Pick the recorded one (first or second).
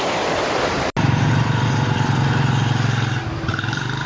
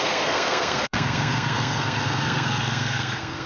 first